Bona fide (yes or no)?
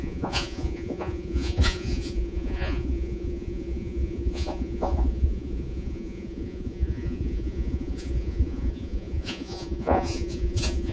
no